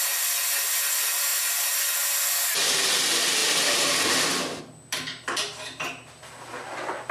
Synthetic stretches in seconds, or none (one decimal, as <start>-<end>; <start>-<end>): none